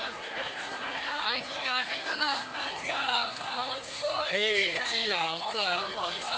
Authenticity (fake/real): fake